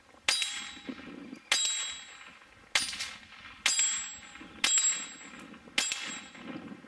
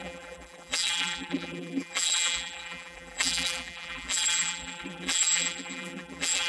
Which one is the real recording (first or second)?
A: first